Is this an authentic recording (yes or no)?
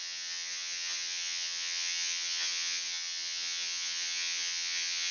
no